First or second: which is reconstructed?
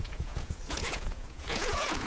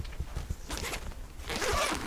first